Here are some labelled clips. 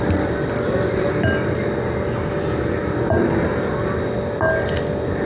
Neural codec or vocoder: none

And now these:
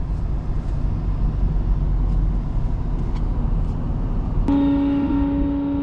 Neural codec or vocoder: none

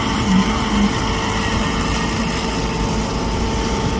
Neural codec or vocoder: none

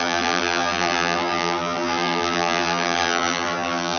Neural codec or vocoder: vocoder, BigVGAN v2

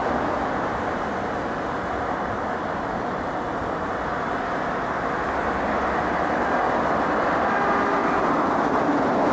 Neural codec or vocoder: none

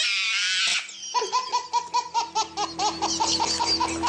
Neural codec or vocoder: none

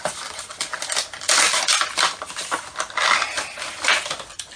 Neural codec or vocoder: none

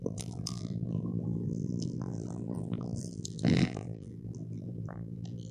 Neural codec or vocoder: vocoder, BigVGAN v2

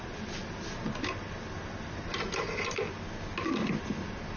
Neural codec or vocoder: none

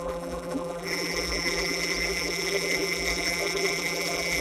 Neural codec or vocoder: vocoder, BigVGAN v2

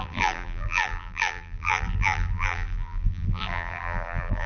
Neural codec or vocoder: vocoder, BigVGAN v2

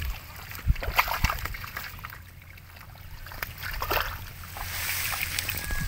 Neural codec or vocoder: none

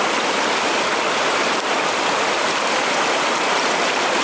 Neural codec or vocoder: vocoder, BigVGAN v2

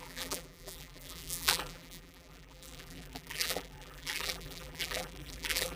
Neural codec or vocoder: vocoder, BigVGAN v2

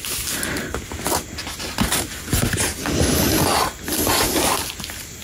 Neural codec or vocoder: none